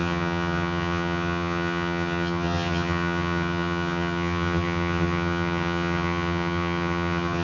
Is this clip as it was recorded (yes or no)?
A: no